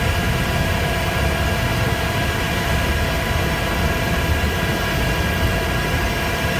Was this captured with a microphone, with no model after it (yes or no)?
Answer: yes